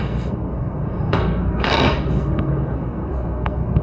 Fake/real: fake